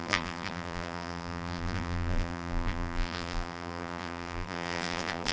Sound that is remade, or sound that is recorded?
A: remade